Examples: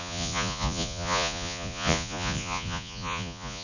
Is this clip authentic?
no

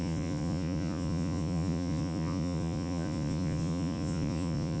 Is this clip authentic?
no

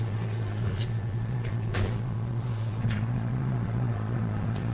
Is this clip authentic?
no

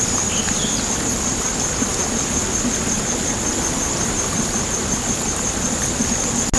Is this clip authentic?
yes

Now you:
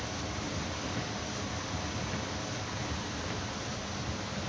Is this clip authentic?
yes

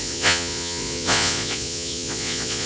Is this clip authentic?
no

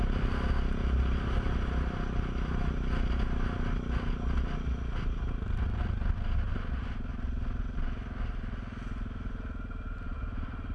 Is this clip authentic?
yes